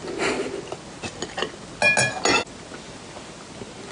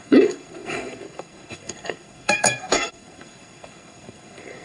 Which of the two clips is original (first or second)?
first